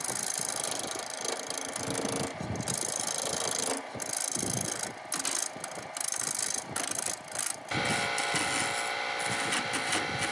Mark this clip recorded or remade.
recorded